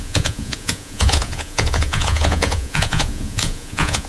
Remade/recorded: remade